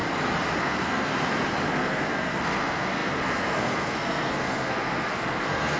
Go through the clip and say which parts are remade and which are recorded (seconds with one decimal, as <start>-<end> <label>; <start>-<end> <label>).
0.0-0.6 recorded; 0.6-1.1 remade; 1.1-1.7 recorded; 1.7-5.8 remade